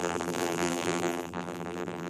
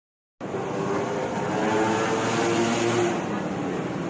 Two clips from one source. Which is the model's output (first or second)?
first